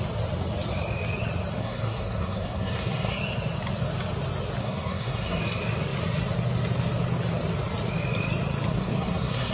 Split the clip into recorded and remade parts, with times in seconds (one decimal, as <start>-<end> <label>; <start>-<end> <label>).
0.0-1.6 recorded; 1.6-3.2 remade; 3.2-4.6 recorded; 4.6-5.4 remade; 5.4-8.7 recorded; 8.7-9.5 remade